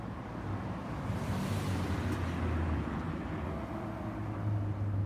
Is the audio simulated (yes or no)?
no